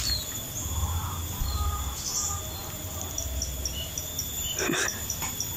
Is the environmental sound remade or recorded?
recorded